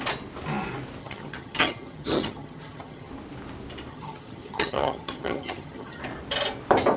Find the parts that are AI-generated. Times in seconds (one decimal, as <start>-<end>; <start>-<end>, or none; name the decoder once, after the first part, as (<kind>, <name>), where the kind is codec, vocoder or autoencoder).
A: 1.0-3.1 (vocoder, HiFi-GAN); 3.9-6.0